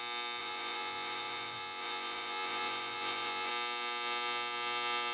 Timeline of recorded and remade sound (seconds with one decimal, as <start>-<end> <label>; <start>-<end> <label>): 0.0-0.4 recorded; 0.4-3.5 remade; 3.5-5.1 recorded